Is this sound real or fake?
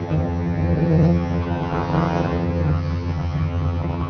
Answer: fake